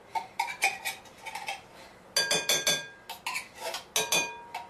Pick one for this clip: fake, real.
real